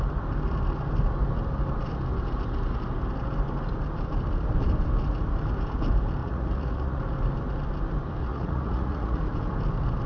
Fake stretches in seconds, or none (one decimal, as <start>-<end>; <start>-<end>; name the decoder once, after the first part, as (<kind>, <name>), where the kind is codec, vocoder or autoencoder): 6.2-7.0 (vocoder, Vocos); 8.2-9.2